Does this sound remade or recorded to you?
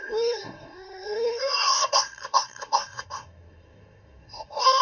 remade